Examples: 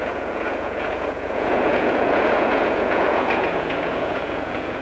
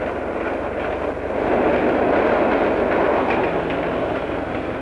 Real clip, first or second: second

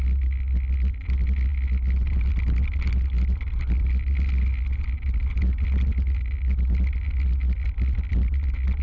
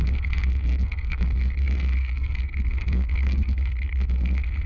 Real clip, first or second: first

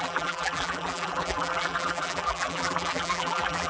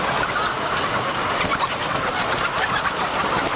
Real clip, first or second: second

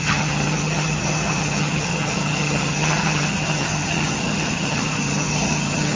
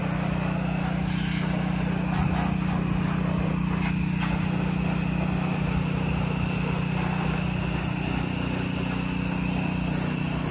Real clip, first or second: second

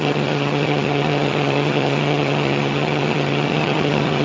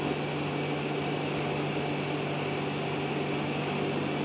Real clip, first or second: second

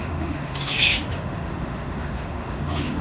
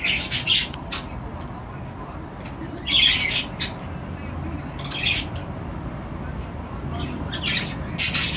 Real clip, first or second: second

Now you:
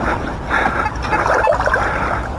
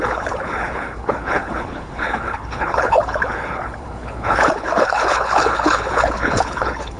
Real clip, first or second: first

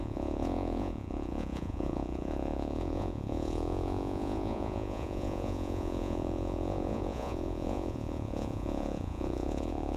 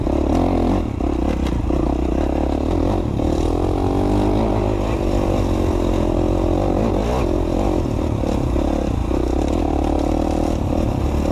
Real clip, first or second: second